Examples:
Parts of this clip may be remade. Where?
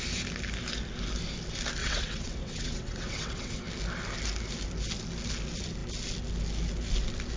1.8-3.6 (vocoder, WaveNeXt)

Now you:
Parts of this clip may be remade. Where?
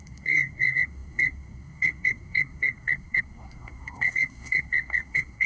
0.0-5.5 (codec, SNAC)